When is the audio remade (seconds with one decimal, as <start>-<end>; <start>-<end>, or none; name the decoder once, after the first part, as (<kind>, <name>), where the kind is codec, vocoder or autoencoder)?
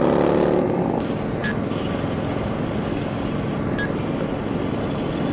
none